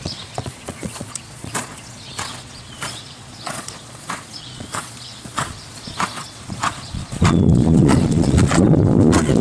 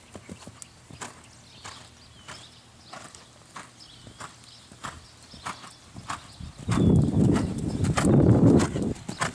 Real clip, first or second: second